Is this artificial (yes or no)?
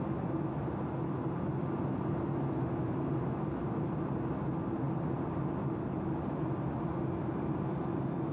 no